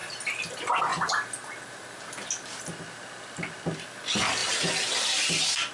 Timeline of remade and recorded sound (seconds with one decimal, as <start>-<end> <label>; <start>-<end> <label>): 0.0-5.7 recorded